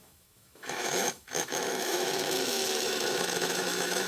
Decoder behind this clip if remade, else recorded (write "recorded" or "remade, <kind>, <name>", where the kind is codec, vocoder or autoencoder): remade, autoencoder, DAC-VAE